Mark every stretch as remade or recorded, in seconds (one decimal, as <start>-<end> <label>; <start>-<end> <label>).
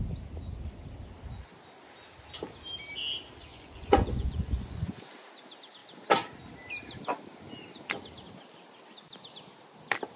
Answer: 0.0-3.5 recorded; 3.5-5.1 remade; 5.1-10.2 recorded